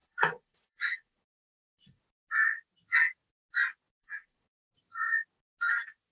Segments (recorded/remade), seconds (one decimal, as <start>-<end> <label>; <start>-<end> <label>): 0.0-2.0 remade; 2.0-4.0 recorded; 4.0-4.5 remade; 4.5-6.1 recorded